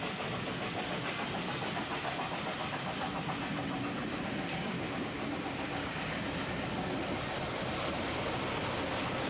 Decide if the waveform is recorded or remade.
recorded